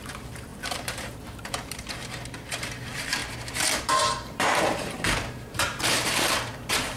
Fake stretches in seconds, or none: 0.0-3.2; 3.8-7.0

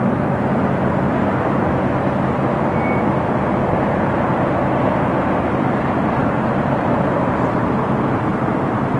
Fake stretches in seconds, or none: 6.2-7.9; 8.3-9.0

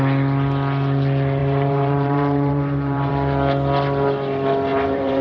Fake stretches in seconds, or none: 1.4-3.1; 4.7-5.2